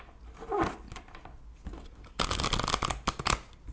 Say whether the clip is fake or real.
real